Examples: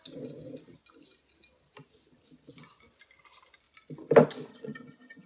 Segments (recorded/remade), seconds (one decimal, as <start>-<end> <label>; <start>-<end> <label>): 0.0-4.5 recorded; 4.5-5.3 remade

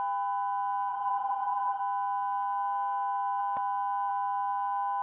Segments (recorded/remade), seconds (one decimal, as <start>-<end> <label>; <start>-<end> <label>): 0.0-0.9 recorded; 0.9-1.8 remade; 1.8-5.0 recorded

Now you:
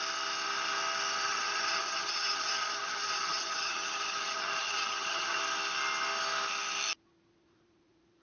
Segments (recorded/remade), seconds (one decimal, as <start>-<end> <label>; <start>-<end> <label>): 0.0-1.3 recorded; 1.3-5.4 remade; 5.4-8.2 recorded